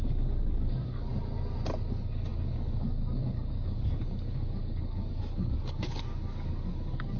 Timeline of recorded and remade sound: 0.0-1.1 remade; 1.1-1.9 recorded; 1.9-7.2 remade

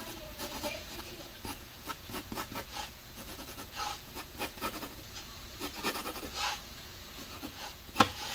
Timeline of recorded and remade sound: 0.0-8.3 remade

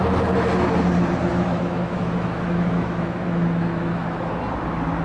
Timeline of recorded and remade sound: 0.0-1.3 recorded; 1.3-4.3 remade; 4.3-5.0 recorded

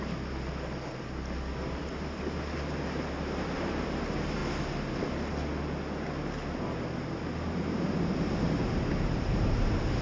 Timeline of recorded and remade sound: 0.0-4.4 remade; 4.4-7.5 recorded; 7.5-10.0 remade

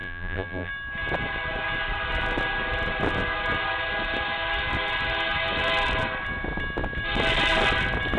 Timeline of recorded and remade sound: 0.0-0.7 remade; 0.7-8.2 recorded

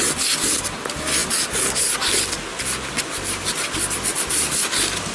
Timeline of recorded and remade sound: 0.0-1.2 remade; 1.2-4.3 recorded; 4.3-5.1 remade